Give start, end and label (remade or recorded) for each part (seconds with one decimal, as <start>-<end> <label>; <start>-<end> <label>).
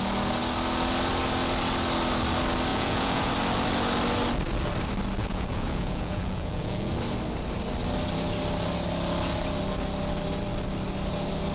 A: 0.0-2.7 recorded; 2.7-3.3 remade; 3.3-5.2 recorded; 5.2-6.9 remade; 6.9-11.5 recorded